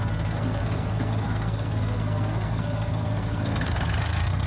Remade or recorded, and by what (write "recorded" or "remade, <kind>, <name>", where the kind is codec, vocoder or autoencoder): remade, codec, SNAC